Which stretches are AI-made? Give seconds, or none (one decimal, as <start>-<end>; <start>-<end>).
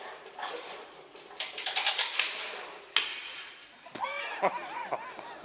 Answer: none